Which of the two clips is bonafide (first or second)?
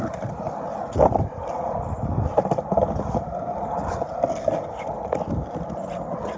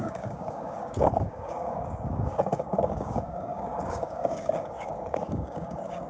first